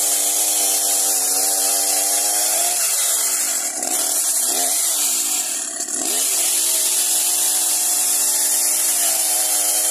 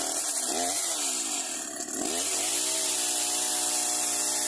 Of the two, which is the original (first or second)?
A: second